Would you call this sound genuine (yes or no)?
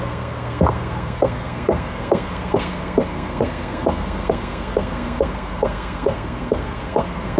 no